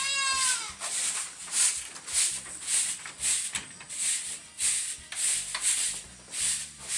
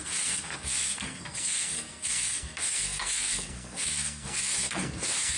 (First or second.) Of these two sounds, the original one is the first